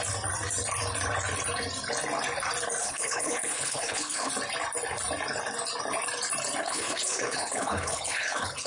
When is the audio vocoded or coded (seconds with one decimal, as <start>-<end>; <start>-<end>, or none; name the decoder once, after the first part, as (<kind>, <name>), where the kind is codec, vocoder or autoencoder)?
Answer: 2.8-4.3 (codec, HILCodec); 6.6-8.7